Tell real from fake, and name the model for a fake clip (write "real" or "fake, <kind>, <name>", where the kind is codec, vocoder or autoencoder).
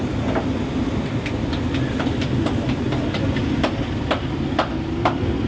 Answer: real